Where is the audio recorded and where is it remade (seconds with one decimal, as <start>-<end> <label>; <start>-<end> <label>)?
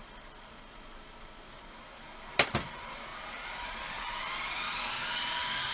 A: 0.0-5.7 recorded